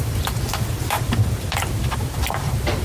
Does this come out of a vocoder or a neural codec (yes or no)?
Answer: yes